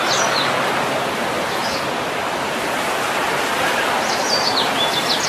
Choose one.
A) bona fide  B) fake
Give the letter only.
A